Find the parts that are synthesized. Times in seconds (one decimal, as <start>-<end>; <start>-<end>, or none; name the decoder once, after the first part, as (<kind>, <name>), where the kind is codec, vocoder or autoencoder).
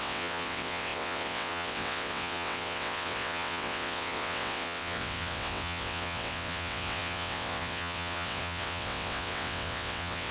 0.0-10.3 (vocoder, WaveNeXt)